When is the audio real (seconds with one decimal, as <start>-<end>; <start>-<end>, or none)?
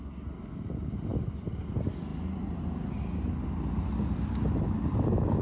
0.0-5.4